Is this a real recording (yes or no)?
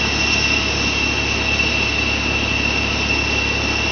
yes